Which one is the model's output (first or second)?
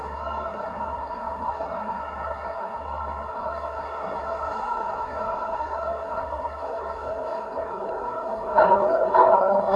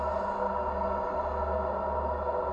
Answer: first